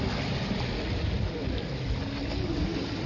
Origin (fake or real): real